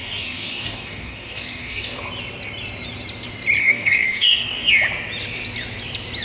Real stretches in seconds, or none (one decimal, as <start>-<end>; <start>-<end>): 2.0-3.6; 4.7-6.2